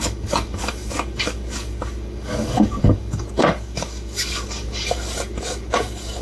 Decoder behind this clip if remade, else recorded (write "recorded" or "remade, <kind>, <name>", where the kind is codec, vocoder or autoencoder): remade, codec, DAC